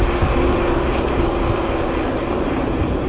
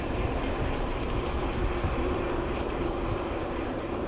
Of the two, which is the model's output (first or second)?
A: second